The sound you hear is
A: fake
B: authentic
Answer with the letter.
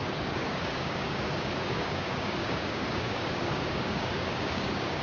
A